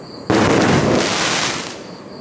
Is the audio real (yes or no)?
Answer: yes